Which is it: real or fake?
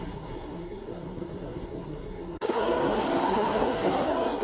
fake